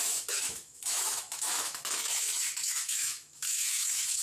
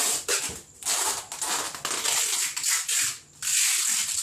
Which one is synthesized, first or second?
first